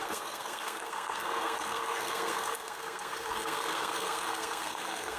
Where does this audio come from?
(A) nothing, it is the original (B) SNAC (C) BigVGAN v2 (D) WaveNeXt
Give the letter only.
B